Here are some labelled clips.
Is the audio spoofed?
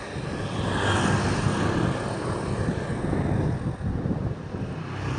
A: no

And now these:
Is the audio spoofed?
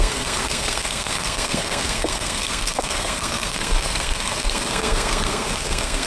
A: yes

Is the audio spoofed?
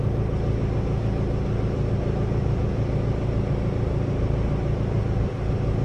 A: no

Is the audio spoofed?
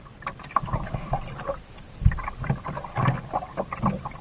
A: no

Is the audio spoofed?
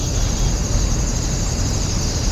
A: no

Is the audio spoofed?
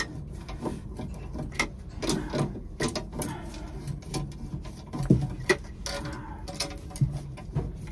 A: no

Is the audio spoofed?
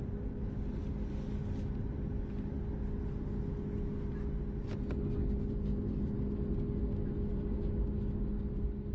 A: no